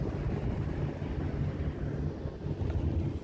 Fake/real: real